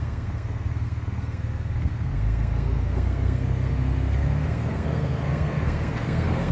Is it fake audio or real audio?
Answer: fake